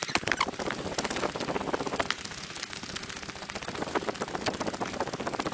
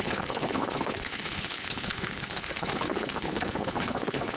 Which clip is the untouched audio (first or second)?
first